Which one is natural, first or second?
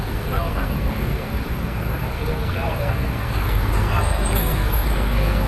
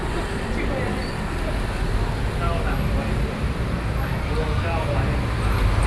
second